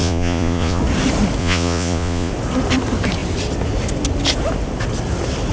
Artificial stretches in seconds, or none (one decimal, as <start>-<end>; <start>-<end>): 0.0-0.8; 1.4-2.3